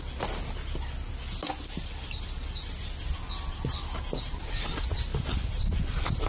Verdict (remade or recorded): recorded